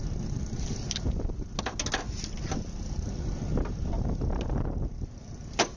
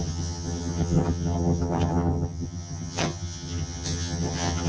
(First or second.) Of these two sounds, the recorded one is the first